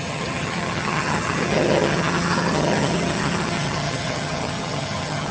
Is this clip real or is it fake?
fake